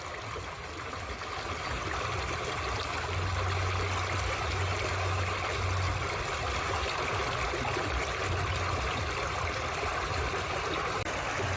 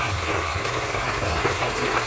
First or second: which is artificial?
second